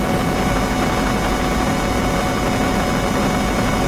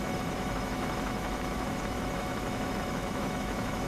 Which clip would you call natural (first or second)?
first